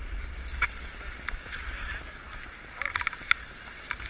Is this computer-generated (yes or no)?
no